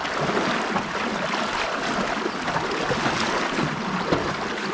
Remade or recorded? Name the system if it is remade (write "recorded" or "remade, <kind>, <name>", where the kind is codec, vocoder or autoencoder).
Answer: recorded